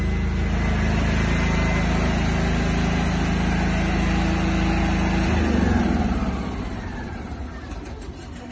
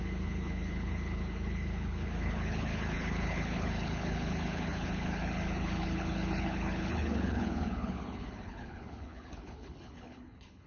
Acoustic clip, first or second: first